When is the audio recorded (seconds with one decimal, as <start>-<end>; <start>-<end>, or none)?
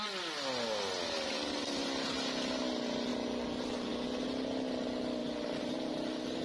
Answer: 0.0-6.4